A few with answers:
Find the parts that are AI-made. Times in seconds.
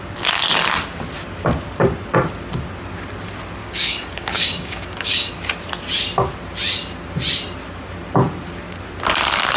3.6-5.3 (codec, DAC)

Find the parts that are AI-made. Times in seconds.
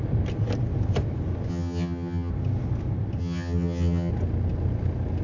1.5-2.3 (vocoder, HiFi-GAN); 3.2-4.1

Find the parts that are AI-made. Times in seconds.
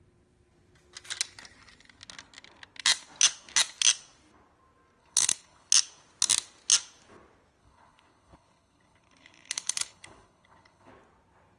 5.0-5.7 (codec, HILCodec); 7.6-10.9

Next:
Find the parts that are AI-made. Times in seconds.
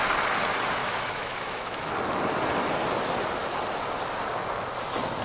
0.8-1.9 (autoencoder, DAC-VAE)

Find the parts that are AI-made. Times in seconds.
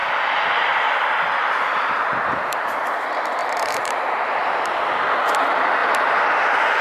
3.4-4.3 (vocoder, BigVGAN v2)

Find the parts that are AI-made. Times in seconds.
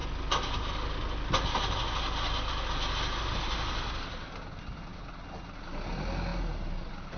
none